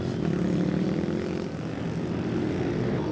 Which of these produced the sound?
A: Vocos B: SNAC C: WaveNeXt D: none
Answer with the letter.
D